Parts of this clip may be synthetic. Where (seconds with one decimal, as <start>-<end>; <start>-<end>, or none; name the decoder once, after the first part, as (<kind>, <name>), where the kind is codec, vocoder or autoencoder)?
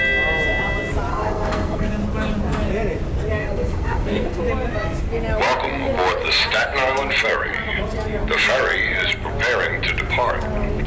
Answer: 1.1-1.9 (codec, SNAC); 3.4-4.4